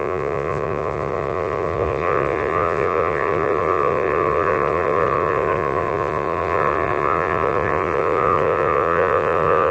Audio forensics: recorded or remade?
remade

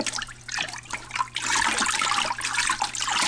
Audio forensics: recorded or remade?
recorded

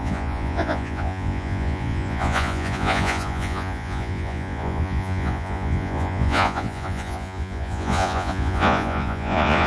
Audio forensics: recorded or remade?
remade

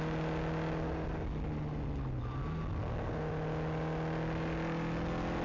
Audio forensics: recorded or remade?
recorded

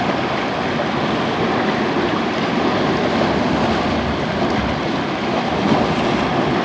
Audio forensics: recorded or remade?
recorded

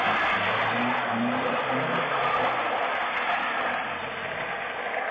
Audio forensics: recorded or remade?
recorded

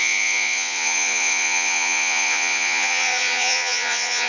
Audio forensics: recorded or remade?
remade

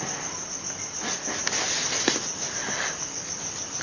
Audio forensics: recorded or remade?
recorded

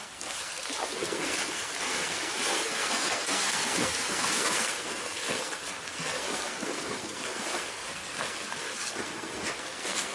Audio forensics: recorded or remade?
remade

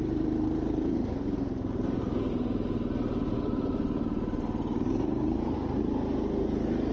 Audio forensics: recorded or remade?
remade